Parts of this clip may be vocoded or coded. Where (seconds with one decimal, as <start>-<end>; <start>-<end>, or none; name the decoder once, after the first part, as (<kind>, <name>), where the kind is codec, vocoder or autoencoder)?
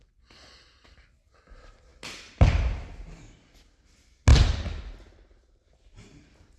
none